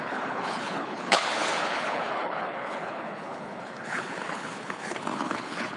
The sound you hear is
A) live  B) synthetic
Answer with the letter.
B